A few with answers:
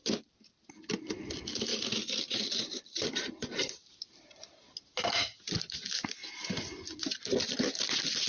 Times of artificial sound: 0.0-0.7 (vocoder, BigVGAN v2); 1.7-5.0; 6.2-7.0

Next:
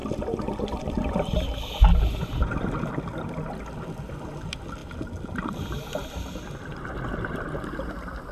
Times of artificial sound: none

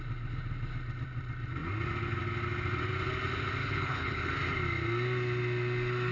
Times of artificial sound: 3.6-4.3 (codec, HILCodec)

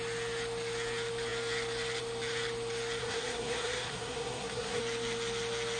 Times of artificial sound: 3.0-4.8 (codec, SNAC)

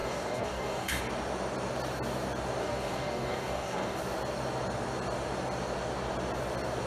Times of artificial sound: 0.0-1.0 (codec, DAC); 2.6-4.0

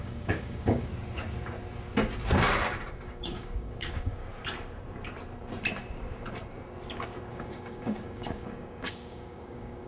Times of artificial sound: 0.0-0.9 (codec, DAC); 2.9-4.2; 7.3-9.9

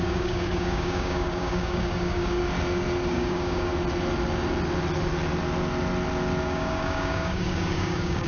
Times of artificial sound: 0.0-2.4 (codec, DAC); 3.1-3.7; 6.4-8.3